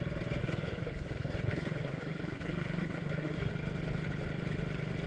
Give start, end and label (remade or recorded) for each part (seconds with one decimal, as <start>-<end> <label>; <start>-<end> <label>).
0.0-0.4 recorded; 0.4-3.5 remade; 3.5-5.1 recorded